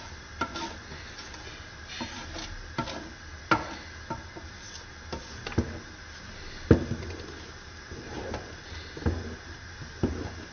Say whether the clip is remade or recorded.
recorded